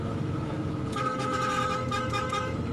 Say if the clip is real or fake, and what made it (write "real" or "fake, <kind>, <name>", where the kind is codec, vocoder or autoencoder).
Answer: fake, autoencoder, DAC-VAE